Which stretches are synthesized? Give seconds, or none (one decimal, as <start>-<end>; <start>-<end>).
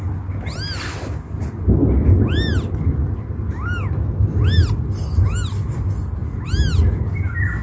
none